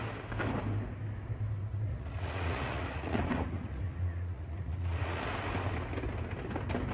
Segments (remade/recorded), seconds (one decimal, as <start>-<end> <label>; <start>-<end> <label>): 0.0-1.7 recorded; 1.7-5.3 remade; 5.3-6.9 recorded